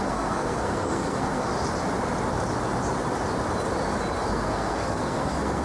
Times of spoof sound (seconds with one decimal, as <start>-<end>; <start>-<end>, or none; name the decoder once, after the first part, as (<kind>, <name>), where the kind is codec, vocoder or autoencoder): 0.0-1.5 (codec, SNAC); 4.3-5.6